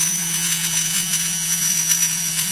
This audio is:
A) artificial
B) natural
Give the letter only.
A